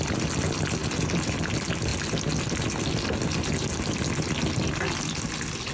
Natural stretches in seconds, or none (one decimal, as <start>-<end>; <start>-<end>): 0.0-0.8; 1.4-5.7